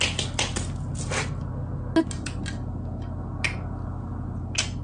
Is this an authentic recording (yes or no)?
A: yes